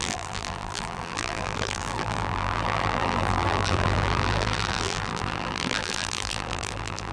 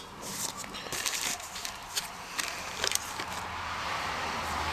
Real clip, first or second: second